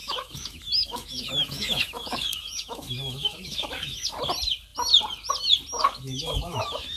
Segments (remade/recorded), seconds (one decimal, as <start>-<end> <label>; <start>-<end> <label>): 0.0-4.2 remade; 4.2-5.8 recorded; 5.8-7.0 remade